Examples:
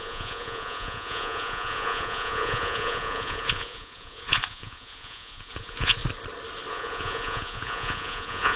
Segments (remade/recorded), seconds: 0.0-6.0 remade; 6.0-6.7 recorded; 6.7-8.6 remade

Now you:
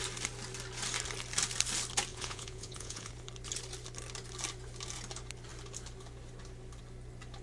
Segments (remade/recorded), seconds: 0.0-2.1 recorded; 2.1-3.1 remade; 3.1-7.4 recorded

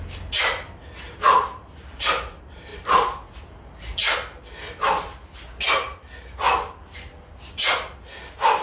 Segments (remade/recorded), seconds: 0.0-8.6 recorded

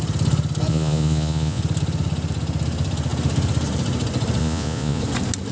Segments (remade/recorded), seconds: 0.0-0.7 recorded; 0.7-1.6 remade; 1.6-4.4 recorded; 4.4-5.0 remade; 5.0-5.5 recorded

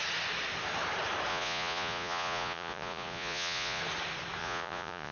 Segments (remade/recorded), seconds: 0.0-1.3 recorded; 1.3-3.8 remade; 3.8-4.4 recorded; 4.4-5.1 remade

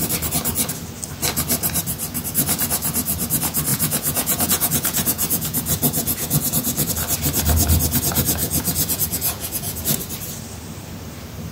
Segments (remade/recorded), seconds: 0.0-3.7 recorded; 3.7-6.9 remade; 6.9-8.4 recorded; 8.4-10.0 remade; 10.0-11.5 recorded